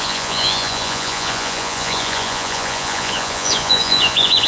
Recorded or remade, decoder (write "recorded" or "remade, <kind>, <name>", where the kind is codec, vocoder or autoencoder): remade, vocoder, Vocos